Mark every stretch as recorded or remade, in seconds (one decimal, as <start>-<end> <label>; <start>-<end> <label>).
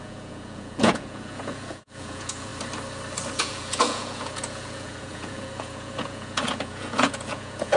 0.0-2.5 remade; 2.5-3.3 recorded; 3.3-7.8 remade